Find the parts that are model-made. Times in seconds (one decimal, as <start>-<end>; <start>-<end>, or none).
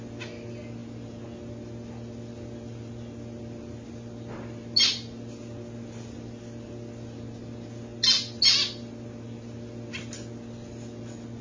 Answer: none